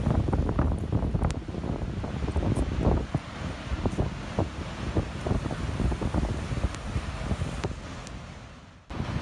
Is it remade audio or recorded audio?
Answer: recorded